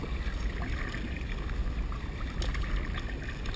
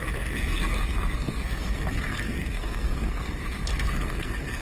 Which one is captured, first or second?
first